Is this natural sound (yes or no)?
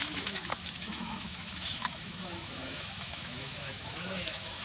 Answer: no